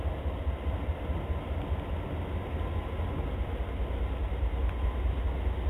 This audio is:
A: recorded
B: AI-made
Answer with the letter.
A